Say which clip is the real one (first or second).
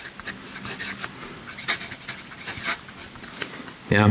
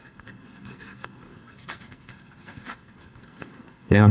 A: first